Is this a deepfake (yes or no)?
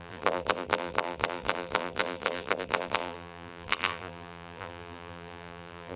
yes